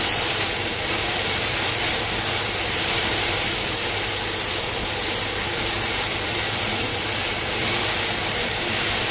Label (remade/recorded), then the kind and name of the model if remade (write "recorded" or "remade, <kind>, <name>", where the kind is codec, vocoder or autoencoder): remade, vocoder, BigVGAN v2